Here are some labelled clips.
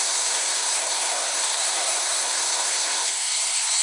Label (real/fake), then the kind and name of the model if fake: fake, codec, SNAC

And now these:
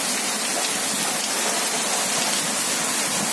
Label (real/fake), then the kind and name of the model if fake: real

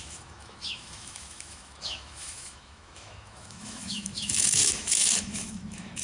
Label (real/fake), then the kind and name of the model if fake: fake, autoencoder, DAC-VAE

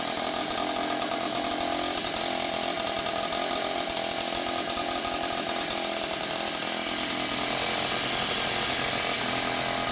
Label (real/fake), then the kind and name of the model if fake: real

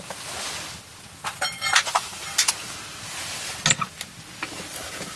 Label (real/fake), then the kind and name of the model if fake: real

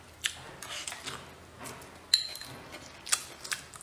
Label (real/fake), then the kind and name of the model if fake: real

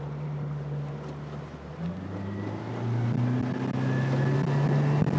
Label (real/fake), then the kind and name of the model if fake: real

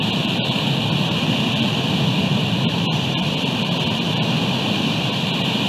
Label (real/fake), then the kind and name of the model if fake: fake, vocoder, BigVGAN v2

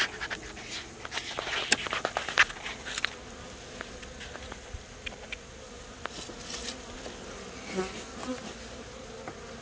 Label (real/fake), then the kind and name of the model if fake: real